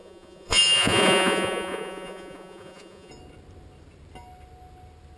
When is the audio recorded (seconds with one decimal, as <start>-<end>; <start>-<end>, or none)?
3.1-5.2